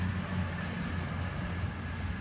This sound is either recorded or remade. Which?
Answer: recorded